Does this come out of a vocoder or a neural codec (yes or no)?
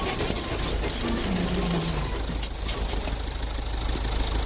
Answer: no